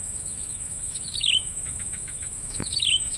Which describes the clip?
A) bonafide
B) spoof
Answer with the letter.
B